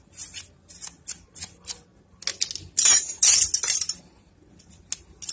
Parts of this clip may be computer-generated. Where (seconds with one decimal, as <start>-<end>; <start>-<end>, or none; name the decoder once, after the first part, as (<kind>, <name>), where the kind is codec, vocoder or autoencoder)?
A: none